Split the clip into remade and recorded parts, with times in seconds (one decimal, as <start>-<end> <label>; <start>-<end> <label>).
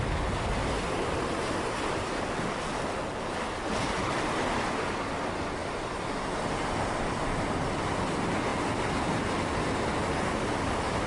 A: 0.0-11.1 recorded